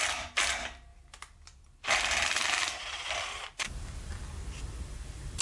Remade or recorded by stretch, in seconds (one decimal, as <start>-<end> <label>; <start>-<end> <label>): 0.0-5.4 recorded